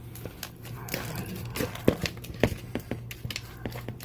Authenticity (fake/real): real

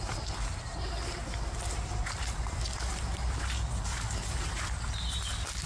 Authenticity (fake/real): real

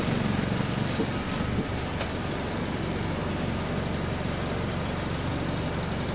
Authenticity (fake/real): real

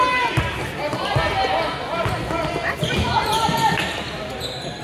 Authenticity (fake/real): real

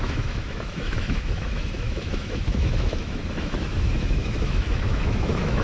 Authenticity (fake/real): fake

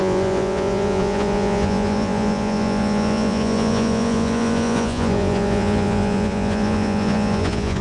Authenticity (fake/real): fake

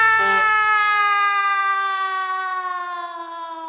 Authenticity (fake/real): real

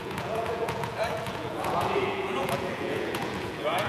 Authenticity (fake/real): fake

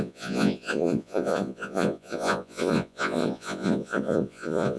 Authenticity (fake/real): fake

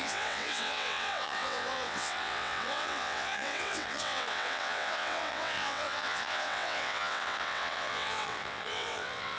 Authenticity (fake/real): fake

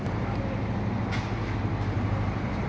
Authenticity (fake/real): real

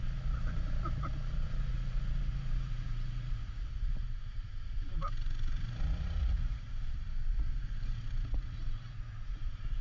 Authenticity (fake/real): fake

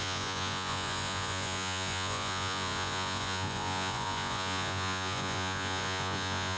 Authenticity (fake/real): fake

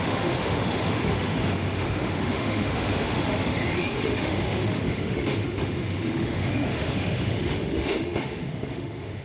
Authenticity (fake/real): fake